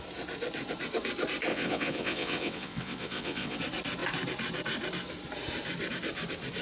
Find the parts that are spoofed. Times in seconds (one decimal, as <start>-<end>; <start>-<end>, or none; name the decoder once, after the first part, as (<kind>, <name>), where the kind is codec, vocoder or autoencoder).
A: 1.5-3.6 (vocoder, WaveNeXt)